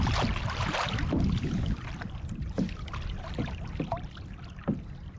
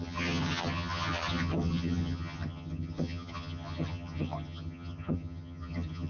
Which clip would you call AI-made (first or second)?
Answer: second